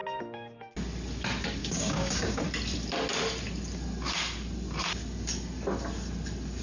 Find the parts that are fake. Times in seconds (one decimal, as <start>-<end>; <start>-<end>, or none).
0.0-0.7; 1.6-2.4